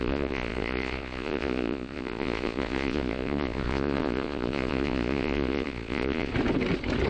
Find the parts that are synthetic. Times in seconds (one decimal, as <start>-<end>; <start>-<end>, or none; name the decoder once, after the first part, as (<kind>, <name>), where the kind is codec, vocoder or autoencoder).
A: 0.0-6.3 (vocoder, Vocos)